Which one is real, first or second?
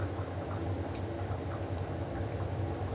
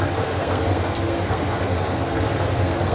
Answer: first